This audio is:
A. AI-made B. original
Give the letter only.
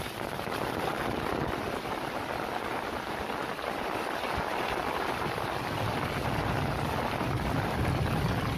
B